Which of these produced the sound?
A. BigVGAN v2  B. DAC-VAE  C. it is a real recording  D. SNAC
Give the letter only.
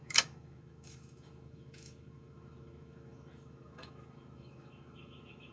B